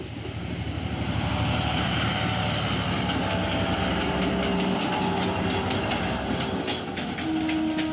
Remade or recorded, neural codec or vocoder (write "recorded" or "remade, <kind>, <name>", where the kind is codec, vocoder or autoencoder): recorded